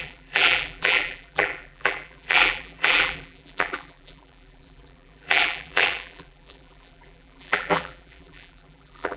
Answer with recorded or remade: remade